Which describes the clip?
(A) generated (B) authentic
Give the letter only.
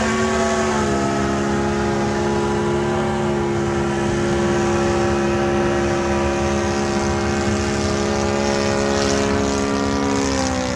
B